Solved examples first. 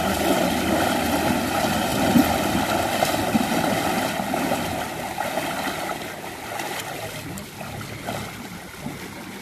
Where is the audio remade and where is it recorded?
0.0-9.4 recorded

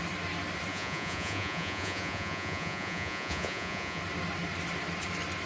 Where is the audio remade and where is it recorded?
0.0-0.7 recorded; 0.7-4.0 remade; 4.0-5.5 recorded